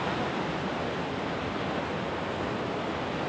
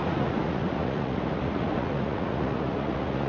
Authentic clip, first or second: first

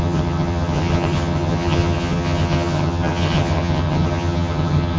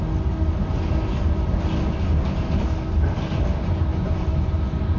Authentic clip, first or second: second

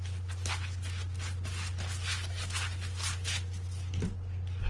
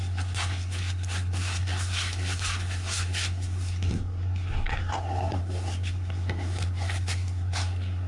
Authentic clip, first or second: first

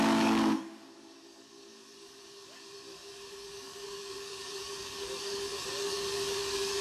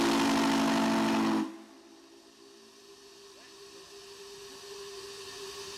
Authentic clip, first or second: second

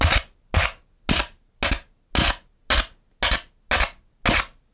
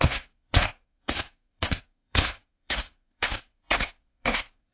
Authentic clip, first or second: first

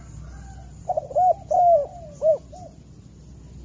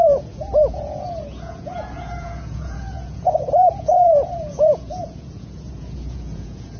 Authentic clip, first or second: first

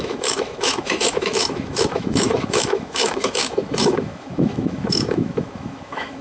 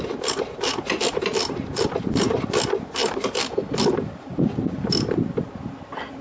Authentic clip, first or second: second